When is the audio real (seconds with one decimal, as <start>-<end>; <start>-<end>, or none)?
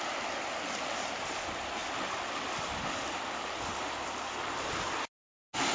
0.0-5.7